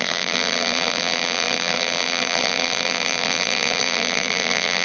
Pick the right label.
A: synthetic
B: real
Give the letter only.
A